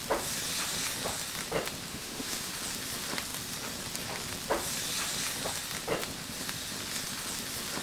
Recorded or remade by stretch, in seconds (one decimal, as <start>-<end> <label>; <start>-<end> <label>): 0.0-1.9 recorded; 1.9-2.5 remade; 2.5-7.8 recorded